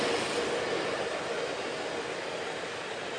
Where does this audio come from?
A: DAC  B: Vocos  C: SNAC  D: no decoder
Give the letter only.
D